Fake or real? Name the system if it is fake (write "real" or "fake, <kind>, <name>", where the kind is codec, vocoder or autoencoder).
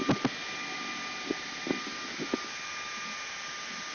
real